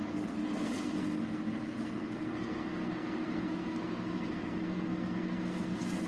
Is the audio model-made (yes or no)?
yes